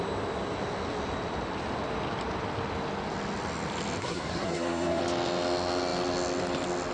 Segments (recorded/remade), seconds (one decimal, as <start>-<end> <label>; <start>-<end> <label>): 0.0-4.0 recorded; 4.0-5.0 remade; 5.0-6.9 recorded